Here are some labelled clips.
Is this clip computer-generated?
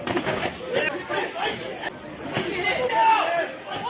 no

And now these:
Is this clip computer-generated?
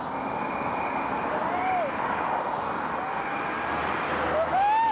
no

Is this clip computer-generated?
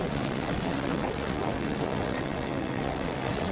yes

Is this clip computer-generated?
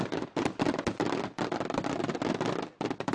no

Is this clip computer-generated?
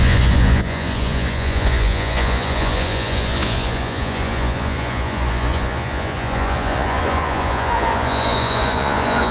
yes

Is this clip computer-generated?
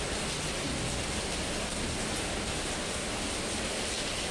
no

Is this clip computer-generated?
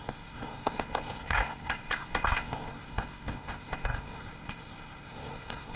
yes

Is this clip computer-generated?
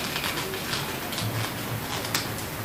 no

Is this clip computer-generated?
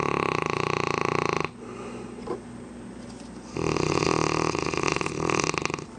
no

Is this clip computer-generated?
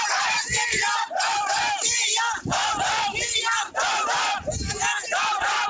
yes